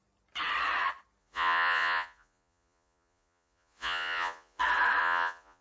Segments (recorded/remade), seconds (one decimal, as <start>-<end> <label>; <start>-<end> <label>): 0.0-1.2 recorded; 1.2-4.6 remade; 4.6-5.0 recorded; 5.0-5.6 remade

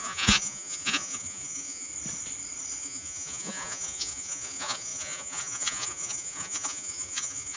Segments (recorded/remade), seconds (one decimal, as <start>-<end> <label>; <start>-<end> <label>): 0.0-1.9 remade; 1.9-2.8 recorded; 2.8-7.6 remade

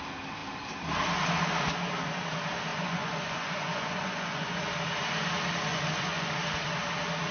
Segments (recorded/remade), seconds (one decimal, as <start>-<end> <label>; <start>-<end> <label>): 0.0-2.7 recorded; 2.7-4.6 remade; 4.6-5.7 recorded; 5.7-6.3 remade; 6.3-7.3 recorded

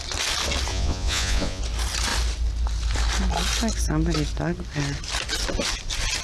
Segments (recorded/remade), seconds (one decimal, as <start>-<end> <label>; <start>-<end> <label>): 0.0-0.7 recorded; 0.7-1.6 remade; 1.6-6.2 recorded